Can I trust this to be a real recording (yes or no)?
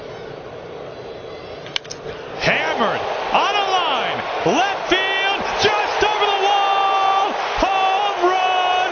yes